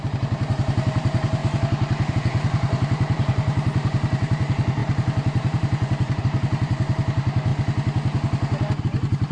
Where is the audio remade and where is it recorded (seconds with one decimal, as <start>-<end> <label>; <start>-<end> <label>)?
0.0-1.4 remade; 1.4-2.1 recorded; 2.1-7.5 remade; 7.5-8.8 recorded; 8.8-9.3 remade